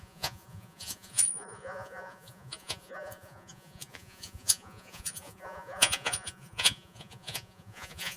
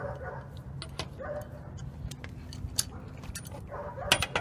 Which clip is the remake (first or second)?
first